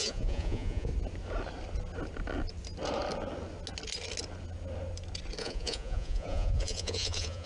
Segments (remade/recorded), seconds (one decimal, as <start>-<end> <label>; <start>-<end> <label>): 0.0-0.9 remade; 0.9-5.4 recorded; 5.4-7.5 remade